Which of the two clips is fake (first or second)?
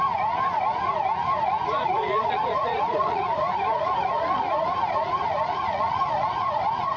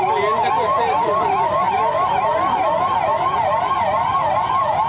first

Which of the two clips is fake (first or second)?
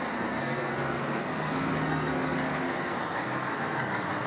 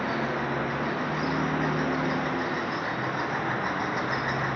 first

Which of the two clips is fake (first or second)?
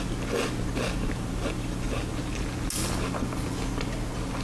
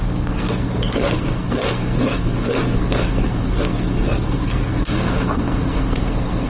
second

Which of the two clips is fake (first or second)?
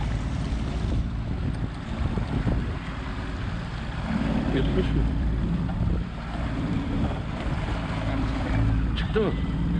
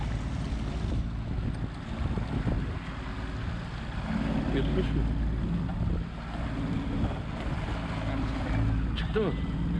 first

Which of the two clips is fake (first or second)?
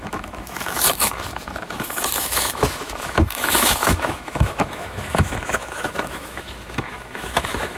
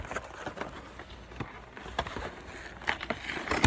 first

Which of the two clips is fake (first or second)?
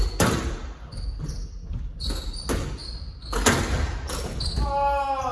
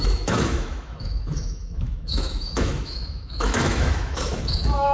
second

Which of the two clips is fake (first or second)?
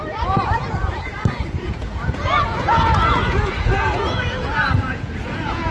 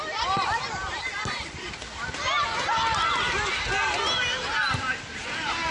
first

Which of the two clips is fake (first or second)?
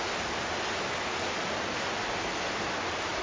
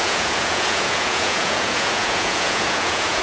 second